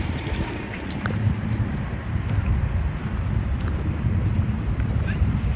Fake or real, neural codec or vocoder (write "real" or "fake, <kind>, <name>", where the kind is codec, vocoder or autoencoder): fake, vocoder, BigVGAN v2